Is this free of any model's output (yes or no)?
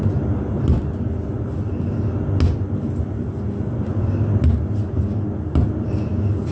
yes